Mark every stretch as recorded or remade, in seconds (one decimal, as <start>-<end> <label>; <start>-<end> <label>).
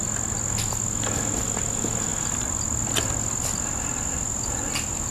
0.0-5.1 recorded